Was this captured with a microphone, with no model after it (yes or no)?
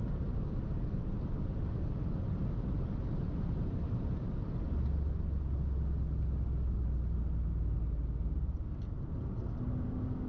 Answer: yes